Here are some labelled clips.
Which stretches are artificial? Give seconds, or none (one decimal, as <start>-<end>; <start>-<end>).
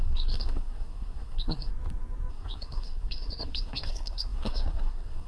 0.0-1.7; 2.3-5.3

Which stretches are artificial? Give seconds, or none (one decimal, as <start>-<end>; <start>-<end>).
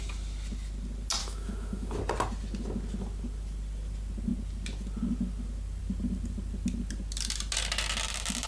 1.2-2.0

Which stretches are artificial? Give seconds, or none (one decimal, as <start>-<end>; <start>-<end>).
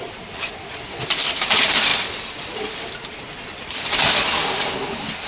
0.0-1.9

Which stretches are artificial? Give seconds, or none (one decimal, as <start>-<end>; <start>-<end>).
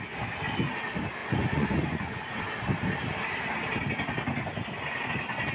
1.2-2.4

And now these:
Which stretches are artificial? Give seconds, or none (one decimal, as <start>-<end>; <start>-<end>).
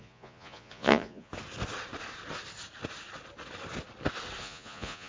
0.0-1.3; 4.4-5.1